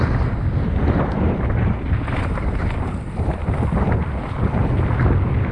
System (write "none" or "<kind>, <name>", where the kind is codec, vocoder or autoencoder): none